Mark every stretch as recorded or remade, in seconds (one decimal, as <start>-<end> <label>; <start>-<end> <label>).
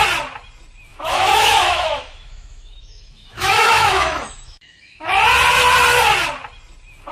0.0-0.9 recorded; 0.9-5.2 remade; 5.2-7.1 recorded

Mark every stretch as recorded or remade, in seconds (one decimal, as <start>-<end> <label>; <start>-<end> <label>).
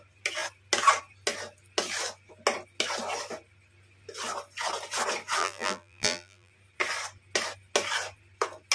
0.0-5.4 recorded; 5.4-6.5 remade; 6.5-8.7 recorded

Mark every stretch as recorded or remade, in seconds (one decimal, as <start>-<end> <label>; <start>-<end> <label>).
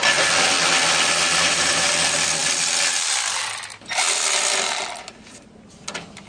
0.0-1.4 recorded; 1.4-1.9 remade; 1.9-6.3 recorded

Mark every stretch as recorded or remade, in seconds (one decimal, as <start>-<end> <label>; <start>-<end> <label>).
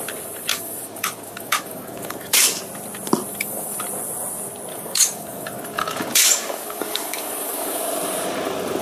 0.0-0.5 recorded; 0.5-2.6 remade; 2.6-3.3 recorded; 3.3-3.8 remade; 3.8-4.7 recorded; 4.7-7.8 remade; 7.8-8.8 recorded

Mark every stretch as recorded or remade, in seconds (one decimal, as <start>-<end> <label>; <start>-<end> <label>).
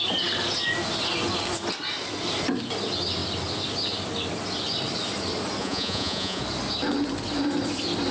0.0-5.6 recorded; 5.6-6.4 remade; 6.4-8.1 recorded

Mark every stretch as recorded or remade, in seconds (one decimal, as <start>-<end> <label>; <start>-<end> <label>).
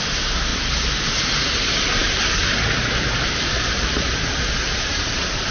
0.0-5.5 remade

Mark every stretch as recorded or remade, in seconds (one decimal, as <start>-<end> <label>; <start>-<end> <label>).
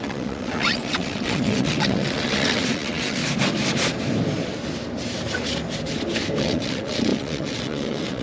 0.0-3.2 remade; 3.2-6.4 recorded; 6.4-8.2 remade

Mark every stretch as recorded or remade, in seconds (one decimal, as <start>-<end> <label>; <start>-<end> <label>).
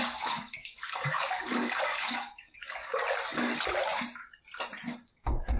0.0-3.0 remade; 3.0-5.1 recorded; 5.1-5.6 remade